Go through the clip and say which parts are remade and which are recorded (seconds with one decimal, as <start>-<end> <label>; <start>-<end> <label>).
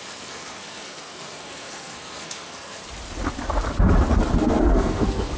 0.0-2.8 remade; 2.8-4.4 recorded; 4.4-5.4 remade